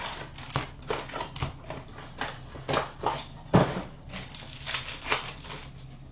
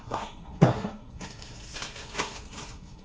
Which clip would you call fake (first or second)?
second